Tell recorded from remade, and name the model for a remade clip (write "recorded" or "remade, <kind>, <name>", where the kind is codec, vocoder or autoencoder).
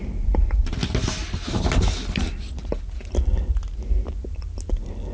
recorded